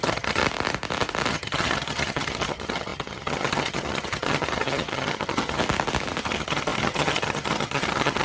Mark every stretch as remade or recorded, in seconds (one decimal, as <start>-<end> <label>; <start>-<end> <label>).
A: 0.0-0.4 remade; 0.4-1.3 recorded; 1.3-5.6 remade; 5.6-6.2 recorded; 6.2-8.2 remade